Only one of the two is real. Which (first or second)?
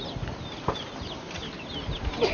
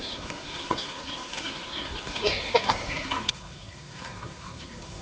first